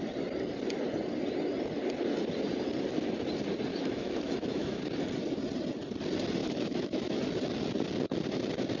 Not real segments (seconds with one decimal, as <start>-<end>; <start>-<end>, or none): 3.7-4.8; 6.4-7.2